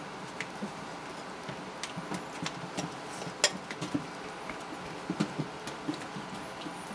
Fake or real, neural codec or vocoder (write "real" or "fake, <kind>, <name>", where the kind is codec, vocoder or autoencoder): real